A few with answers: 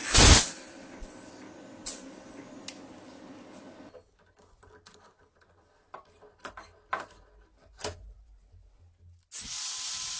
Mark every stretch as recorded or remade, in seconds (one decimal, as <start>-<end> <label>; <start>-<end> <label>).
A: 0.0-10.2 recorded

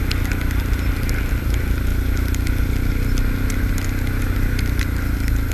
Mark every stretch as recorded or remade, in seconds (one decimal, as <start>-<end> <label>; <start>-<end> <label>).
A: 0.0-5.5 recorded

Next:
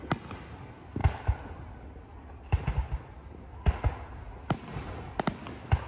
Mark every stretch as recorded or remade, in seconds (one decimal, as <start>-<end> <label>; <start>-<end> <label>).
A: 0.0-5.9 recorded

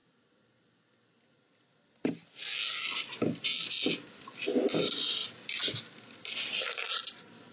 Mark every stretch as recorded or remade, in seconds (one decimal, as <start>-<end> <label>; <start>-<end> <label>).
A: 0.0-7.5 recorded

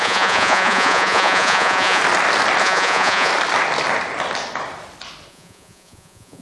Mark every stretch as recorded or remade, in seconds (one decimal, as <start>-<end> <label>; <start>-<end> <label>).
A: 0.0-2.0 remade; 2.0-2.6 recorded; 2.6-3.3 remade; 3.3-5.3 recorded; 5.3-6.4 remade

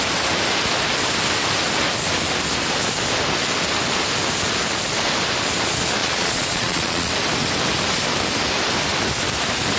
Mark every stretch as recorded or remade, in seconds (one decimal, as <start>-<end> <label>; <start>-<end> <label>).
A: 0.0-6.0 recorded; 6.0-7.1 remade; 7.1-9.8 recorded

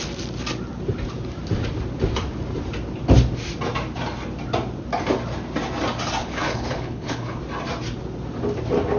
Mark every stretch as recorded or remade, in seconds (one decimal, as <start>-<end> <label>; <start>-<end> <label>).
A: 0.0-6.2 recorded; 6.2-7.4 remade; 7.4-9.0 recorded